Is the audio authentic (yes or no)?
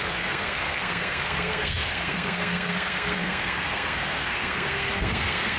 no